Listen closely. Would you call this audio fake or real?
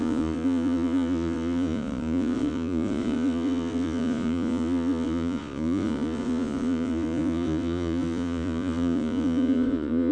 fake